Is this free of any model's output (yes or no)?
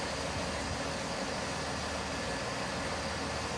yes